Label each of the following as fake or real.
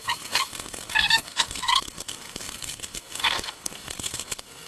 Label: fake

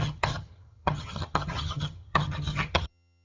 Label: fake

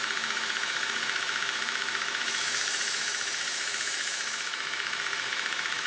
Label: fake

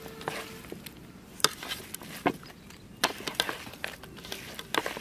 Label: real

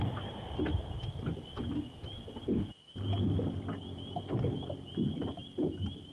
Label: real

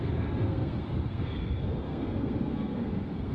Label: fake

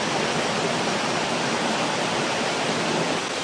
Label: real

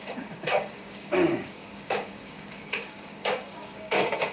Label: fake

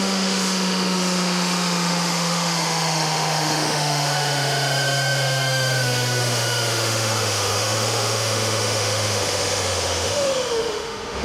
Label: fake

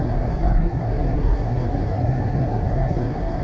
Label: fake